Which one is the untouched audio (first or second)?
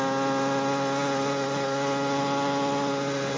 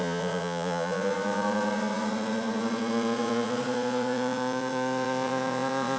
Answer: first